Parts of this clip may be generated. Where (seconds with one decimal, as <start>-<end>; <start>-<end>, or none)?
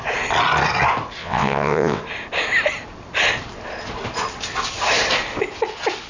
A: 1.2-2.0